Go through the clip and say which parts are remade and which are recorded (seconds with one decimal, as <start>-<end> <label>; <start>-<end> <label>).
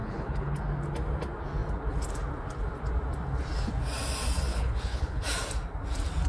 0.0-0.6 remade; 0.6-4.5 recorded; 4.5-5.2 remade; 5.2-6.3 recorded